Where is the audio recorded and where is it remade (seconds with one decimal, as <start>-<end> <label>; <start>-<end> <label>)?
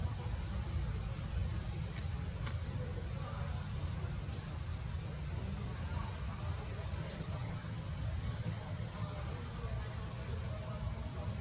0.0-7.0 recorded; 7.0-7.8 remade; 7.8-8.2 recorded; 8.2-9.2 remade; 9.2-11.4 recorded